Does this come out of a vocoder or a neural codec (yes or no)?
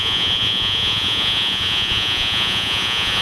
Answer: yes